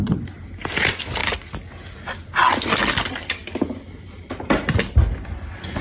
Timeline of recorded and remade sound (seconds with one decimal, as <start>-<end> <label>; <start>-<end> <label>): 0.0-5.8 recorded